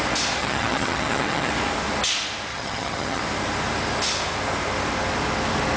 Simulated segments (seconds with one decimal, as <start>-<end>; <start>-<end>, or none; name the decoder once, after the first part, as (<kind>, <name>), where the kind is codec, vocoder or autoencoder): 0.4-1.5 (vocoder, HiFi-GAN); 2.5-3.2